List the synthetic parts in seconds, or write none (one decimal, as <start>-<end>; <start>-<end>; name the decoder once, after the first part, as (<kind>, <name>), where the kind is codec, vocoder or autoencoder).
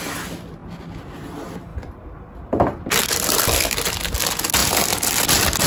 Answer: 1.7-3.9 (vocoder, BigVGAN v2)